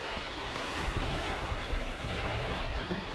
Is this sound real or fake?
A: fake